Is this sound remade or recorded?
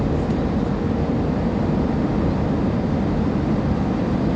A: recorded